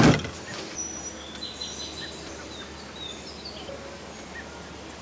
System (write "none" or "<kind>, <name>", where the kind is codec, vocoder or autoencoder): none